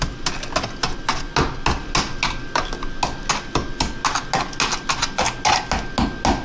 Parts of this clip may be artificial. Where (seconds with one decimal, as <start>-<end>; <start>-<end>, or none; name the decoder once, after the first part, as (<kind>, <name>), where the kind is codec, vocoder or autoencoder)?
none